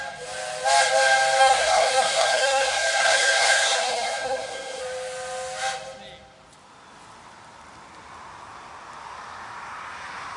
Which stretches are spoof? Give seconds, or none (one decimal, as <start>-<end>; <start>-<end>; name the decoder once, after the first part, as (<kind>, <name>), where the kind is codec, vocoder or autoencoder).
1.4-4.8 (codec, SNAC)